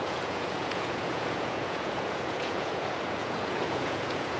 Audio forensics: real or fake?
fake